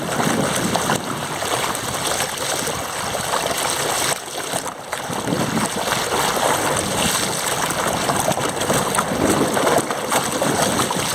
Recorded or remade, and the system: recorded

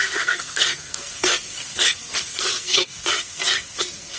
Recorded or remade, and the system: remade, codec, SNAC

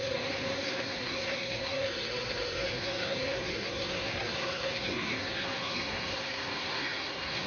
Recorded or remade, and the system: remade, codec, SNAC